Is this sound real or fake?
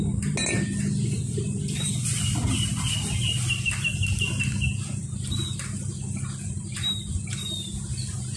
real